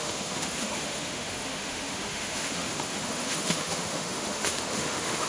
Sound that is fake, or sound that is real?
fake